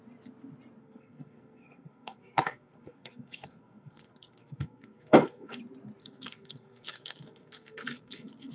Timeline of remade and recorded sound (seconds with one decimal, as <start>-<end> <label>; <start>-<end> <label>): 0.0-0.8 recorded; 0.8-5.6 remade; 5.6-6.0 recorded; 6.0-8.5 remade